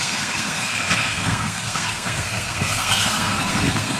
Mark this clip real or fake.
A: fake